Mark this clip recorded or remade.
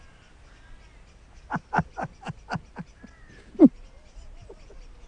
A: recorded